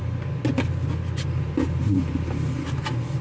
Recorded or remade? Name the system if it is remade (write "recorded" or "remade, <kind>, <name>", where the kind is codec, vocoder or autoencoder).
recorded